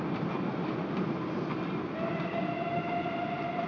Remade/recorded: recorded